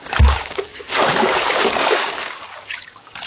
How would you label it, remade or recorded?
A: remade